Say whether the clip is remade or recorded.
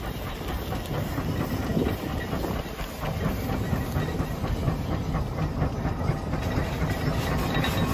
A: recorded